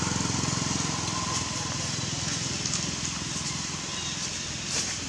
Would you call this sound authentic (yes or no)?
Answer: yes